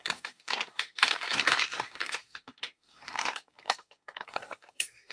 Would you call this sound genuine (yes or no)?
no